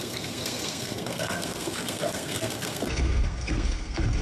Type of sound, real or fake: fake